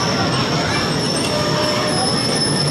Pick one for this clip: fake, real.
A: real